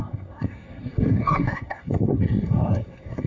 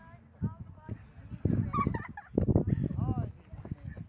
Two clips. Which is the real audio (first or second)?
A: second